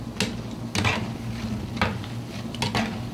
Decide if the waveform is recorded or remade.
recorded